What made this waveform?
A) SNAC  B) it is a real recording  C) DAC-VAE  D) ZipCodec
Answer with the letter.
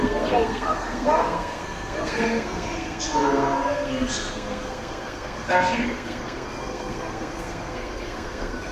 A